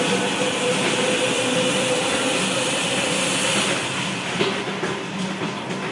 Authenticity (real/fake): real